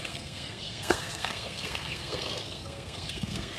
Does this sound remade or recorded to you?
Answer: remade